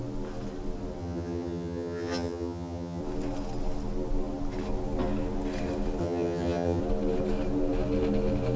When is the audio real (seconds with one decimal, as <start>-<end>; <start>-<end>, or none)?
0.0-1.0; 3.0-6.0; 6.8-8.6

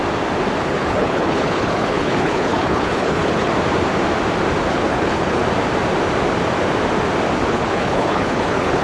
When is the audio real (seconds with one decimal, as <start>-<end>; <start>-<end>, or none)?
0.0-0.6; 3.5-4.7; 5.4-7.5

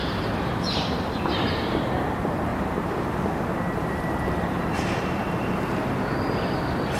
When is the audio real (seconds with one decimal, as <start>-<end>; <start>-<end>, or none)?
1.2-2.5; 3.1-3.8; 5.2-7.0